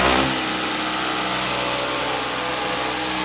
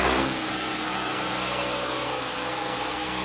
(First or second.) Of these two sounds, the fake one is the second